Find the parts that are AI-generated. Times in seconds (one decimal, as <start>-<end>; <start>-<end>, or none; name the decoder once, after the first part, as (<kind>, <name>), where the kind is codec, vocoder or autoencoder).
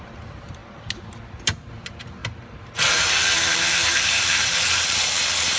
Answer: 0.0-0.6 (vocoder, BigVGAN v2); 1.3-5.6